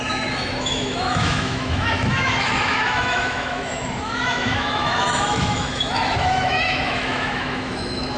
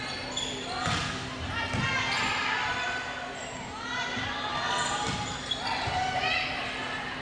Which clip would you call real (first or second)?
second